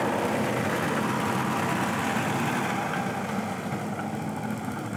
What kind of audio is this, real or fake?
real